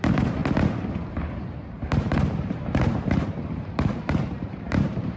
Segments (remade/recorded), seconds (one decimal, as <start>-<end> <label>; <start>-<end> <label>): 0.0-0.4 remade; 0.4-1.1 recorded; 1.1-5.2 remade